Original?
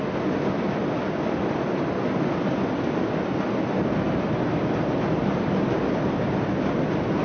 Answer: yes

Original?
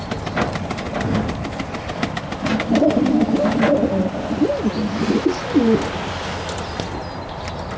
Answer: yes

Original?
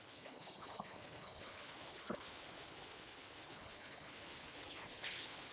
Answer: no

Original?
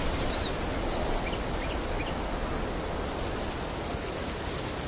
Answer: yes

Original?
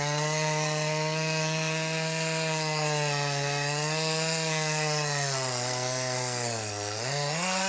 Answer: no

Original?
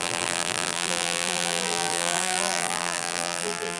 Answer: no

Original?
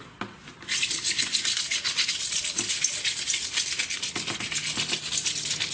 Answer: yes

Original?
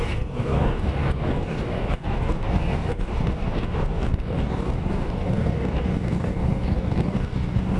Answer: no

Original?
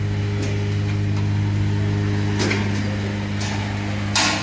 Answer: yes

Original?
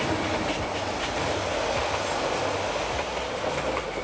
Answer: yes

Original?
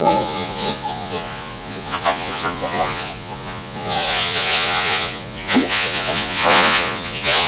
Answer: no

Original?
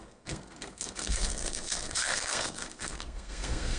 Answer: no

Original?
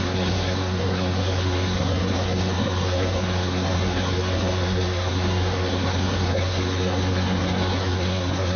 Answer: no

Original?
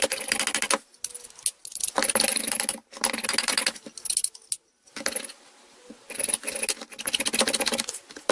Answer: yes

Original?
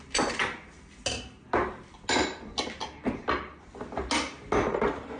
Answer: yes